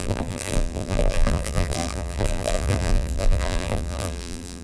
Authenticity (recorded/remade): remade